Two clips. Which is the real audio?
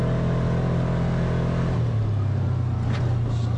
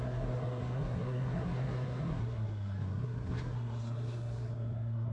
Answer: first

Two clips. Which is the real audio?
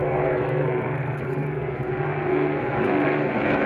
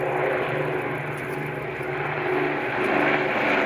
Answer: second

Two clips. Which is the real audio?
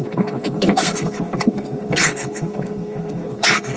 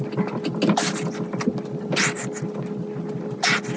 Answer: second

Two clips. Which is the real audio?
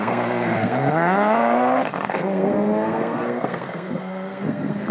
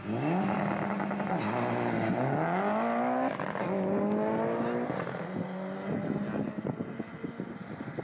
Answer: second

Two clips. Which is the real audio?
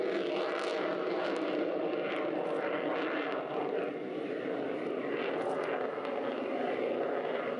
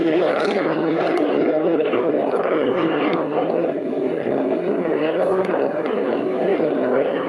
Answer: first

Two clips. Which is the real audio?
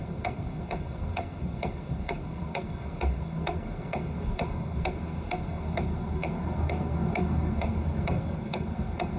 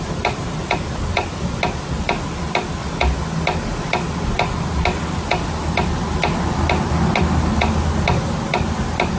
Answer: second